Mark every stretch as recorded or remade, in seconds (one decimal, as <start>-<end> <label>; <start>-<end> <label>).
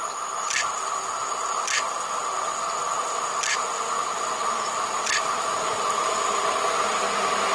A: 0.0-7.5 recorded